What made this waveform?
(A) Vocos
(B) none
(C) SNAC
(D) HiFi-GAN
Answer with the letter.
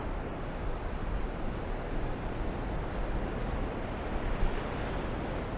B